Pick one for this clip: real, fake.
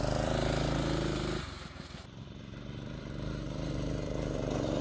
fake